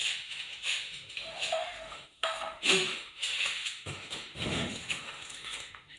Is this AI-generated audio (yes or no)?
yes